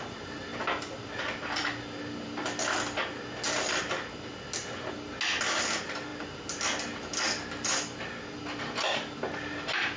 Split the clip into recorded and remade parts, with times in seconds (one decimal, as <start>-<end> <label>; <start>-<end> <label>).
0.0-10.0 recorded